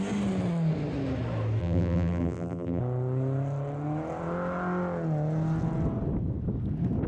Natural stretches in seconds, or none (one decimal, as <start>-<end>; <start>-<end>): 0.0-1.6; 2.8-7.1